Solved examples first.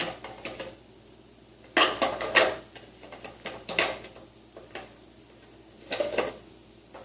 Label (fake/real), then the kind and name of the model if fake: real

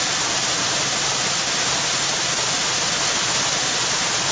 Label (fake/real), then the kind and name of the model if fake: real